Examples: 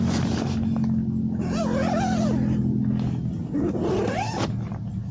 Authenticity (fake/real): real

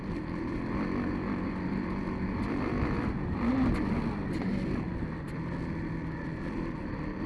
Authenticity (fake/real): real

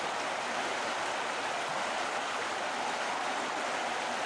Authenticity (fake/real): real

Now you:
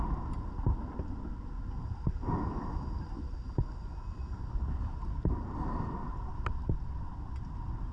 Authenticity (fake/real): real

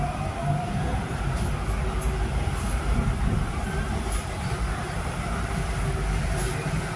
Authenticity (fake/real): real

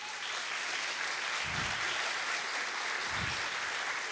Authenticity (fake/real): real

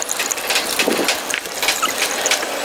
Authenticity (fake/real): real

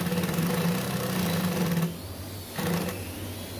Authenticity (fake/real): real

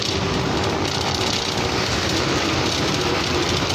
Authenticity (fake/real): real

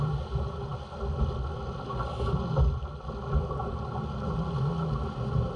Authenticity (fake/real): real